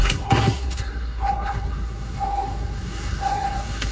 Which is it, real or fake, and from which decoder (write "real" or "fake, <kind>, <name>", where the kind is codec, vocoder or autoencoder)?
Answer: fake, codec, SNAC